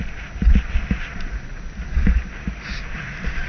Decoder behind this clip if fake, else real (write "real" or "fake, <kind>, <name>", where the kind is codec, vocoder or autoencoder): real